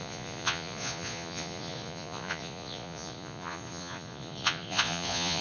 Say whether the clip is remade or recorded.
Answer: remade